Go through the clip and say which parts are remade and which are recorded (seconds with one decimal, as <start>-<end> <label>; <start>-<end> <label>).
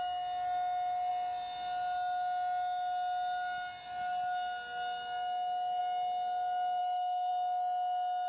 0.0-6.8 recorded; 6.8-7.3 remade; 7.3-8.3 recorded